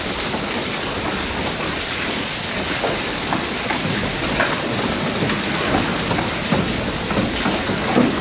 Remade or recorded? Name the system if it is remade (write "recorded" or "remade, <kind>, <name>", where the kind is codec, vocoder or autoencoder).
recorded